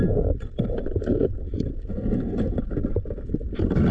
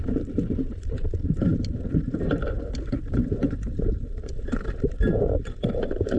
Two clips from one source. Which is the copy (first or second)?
second